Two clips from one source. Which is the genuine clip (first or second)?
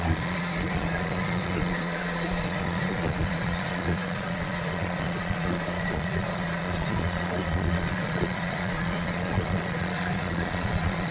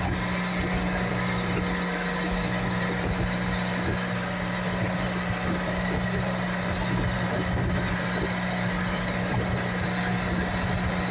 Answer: second